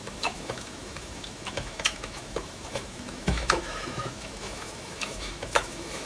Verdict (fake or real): fake